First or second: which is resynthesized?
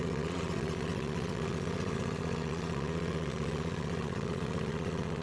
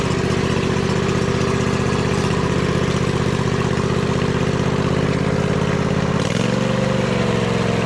first